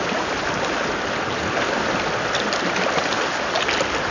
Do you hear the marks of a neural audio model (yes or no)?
no